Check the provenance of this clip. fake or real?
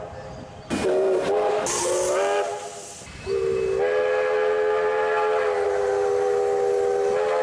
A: real